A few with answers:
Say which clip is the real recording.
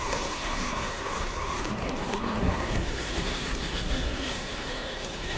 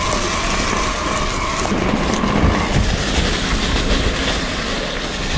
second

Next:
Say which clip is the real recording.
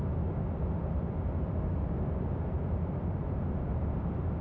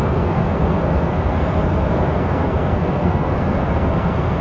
first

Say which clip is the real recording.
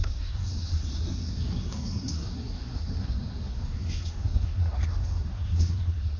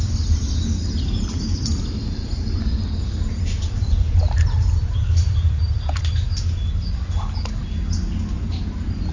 second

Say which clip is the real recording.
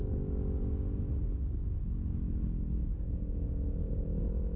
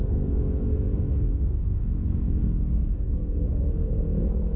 first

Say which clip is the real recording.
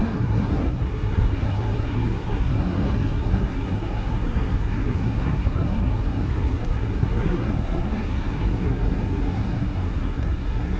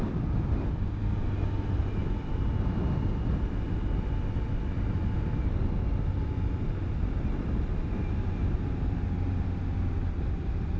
second